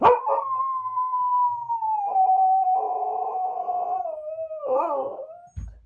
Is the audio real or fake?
real